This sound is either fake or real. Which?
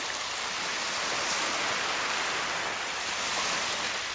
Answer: real